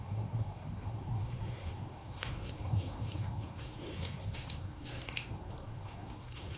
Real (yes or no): no